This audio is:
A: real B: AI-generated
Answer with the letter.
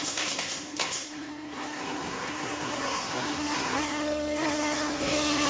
B